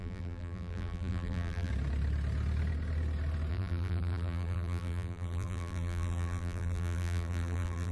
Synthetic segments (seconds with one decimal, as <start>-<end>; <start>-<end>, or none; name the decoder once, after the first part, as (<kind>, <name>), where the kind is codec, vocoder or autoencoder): 0.0-1.7 (vocoder, BigVGAN v2); 3.5-7.9